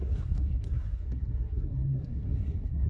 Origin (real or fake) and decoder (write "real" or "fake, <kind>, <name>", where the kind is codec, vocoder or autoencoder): fake, codec, SNAC